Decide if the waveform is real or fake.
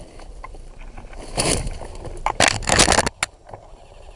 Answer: real